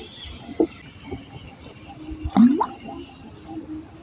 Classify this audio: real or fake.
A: real